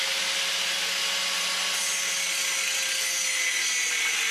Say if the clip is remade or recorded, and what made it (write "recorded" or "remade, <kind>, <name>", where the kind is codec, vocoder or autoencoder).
recorded